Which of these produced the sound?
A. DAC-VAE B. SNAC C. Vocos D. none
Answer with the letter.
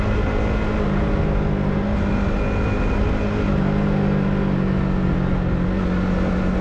D